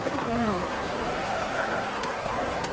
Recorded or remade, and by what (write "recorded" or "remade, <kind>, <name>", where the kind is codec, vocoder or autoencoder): remade, codec, SNAC